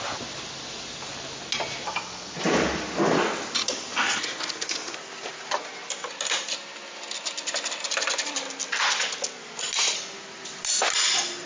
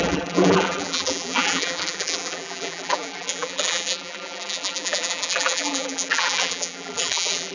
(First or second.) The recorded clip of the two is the first